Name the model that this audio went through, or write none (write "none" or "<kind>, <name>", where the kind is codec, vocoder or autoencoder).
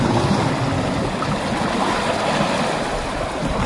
none